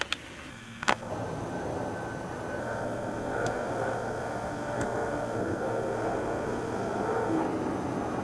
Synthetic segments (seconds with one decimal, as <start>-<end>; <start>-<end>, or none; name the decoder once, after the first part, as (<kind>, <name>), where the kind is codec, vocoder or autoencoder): 0.5-1.1 (codec, SNAC); 2.6-7.4